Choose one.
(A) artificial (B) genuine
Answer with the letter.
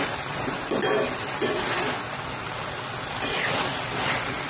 B